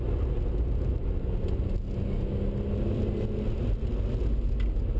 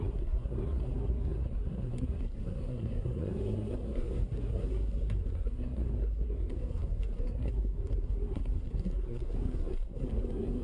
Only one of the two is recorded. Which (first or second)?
first